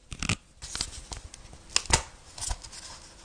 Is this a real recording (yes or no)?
yes